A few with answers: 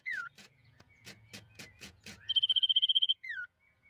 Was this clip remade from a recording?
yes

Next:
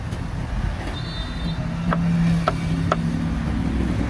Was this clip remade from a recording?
no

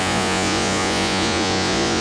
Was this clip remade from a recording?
yes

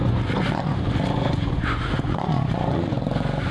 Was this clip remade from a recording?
yes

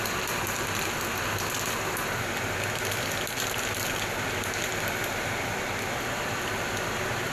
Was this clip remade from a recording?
no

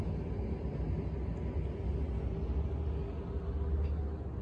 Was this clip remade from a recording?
no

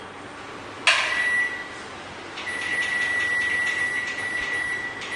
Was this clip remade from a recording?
no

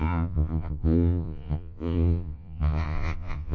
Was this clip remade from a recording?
yes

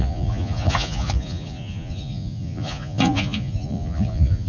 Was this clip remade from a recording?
yes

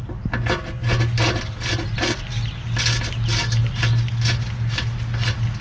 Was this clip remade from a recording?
no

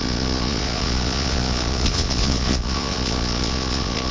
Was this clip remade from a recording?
yes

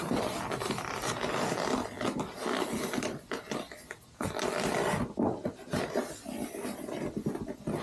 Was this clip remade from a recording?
no